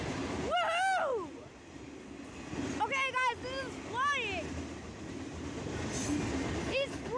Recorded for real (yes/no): yes